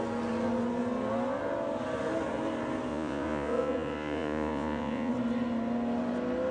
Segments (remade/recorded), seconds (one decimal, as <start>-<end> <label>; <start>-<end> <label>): 0.0-2.9 recorded; 2.9-5.1 remade; 5.1-6.5 recorded